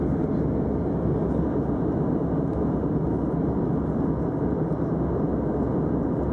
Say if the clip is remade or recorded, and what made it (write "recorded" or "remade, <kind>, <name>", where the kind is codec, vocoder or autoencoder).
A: recorded